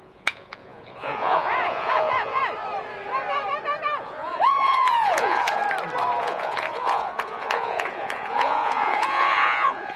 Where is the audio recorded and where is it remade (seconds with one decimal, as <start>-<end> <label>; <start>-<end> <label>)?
0.0-2.4 remade; 2.4-4.0 recorded; 4.0-5.6 remade; 5.6-6.2 recorded; 6.2-10.0 remade